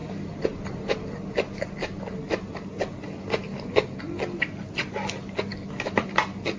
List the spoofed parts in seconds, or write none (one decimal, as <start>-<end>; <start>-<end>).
none